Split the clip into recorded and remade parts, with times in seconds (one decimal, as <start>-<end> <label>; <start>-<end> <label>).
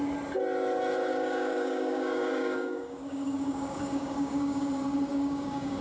0.0-1.1 recorded; 1.1-4.6 remade; 4.6-5.1 recorded; 5.1-5.8 remade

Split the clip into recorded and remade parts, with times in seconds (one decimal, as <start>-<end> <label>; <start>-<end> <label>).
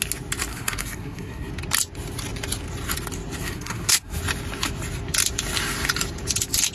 0.0-0.5 recorded; 0.5-1.5 remade; 1.5-3.4 recorded; 3.4-4.2 remade; 4.2-6.7 recorded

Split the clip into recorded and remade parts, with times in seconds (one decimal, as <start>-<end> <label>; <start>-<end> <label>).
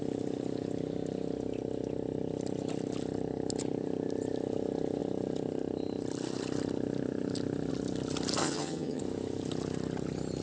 0.0-8.4 recorded; 8.4-9.0 remade; 9.0-10.4 recorded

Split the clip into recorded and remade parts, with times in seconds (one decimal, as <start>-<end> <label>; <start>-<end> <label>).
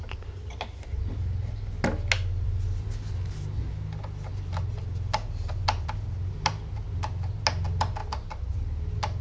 0.0-9.2 recorded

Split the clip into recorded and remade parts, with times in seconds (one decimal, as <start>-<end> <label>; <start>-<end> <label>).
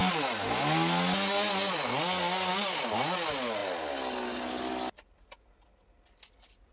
0.0-6.7 recorded